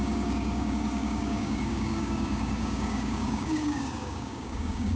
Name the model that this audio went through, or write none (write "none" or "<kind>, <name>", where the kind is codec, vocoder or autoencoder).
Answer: codec, DAC